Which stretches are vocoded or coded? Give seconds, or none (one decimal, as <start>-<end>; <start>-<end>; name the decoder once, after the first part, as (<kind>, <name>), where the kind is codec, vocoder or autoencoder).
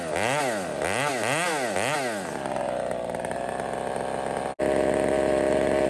none